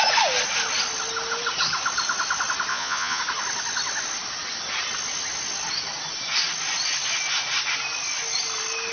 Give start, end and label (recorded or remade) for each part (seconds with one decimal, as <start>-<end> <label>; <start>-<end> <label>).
0.0-2.7 recorded; 2.7-3.2 remade; 3.2-8.9 recorded

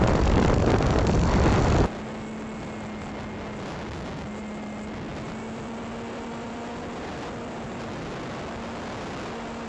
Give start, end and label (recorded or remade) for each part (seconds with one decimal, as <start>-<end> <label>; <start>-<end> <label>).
0.0-5.1 recorded; 5.1-8.4 remade; 8.4-9.7 recorded

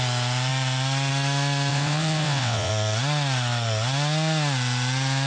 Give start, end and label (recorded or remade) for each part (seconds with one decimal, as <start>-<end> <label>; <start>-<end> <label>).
0.0-1.7 recorded; 1.7-2.7 remade; 2.7-5.3 recorded

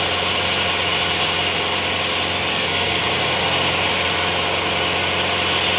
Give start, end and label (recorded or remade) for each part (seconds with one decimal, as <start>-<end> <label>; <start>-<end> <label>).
0.0-2.5 recorded; 2.5-3.0 remade; 3.0-5.8 recorded

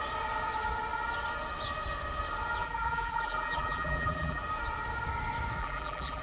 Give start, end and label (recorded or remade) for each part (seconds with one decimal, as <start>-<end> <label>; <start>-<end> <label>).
0.0-2.6 recorded; 2.6-4.4 remade; 4.4-5.6 recorded; 5.6-6.2 remade

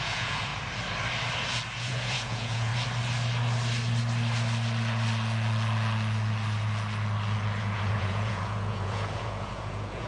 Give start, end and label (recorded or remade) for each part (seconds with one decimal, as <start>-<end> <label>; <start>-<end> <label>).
0.0-0.5 remade; 0.5-1.8 recorded; 1.8-2.7 remade; 2.7-7.6 recorded; 7.6-10.1 remade

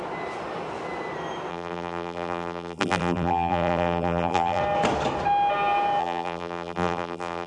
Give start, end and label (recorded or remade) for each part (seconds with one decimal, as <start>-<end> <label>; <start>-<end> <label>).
0.0-1.5 recorded; 1.5-4.6 remade; 4.6-6.0 recorded; 6.0-7.5 remade

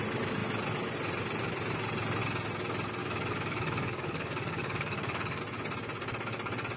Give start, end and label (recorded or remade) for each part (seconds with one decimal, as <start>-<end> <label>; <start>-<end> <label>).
0.0-3.0 recorded; 3.0-5.4 remade; 5.4-6.8 recorded